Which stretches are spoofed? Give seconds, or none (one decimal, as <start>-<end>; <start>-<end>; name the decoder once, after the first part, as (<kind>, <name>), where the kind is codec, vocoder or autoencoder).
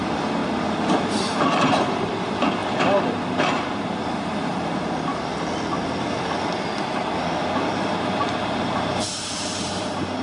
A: 0.0-0.4 (vocoder, BigVGAN v2); 1.4-5.3; 7.4-10.2